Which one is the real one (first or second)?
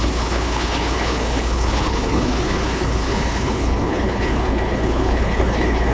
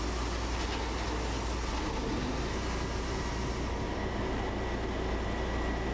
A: second